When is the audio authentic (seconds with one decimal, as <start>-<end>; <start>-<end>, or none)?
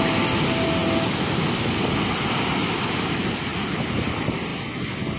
0.0-5.2